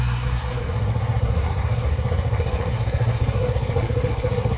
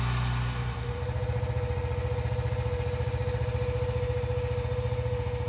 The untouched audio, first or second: second